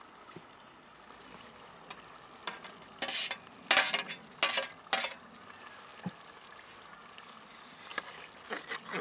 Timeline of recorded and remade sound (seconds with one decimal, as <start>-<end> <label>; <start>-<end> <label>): 0.0-9.0 recorded